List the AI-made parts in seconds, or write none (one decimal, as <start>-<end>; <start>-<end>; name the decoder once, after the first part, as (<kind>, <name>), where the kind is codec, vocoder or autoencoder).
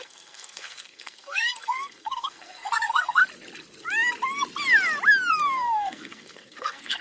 0.0-3.2 (codec, SNAC); 5.3-7.0